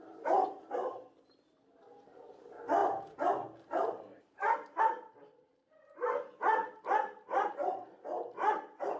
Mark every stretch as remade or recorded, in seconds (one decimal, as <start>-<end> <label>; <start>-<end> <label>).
0.0-2.8 recorded; 2.8-4.8 remade; 4.8-9.0 recorded